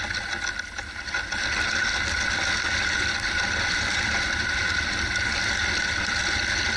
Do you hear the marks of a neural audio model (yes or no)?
no